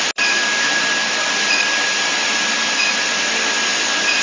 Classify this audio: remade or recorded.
recorded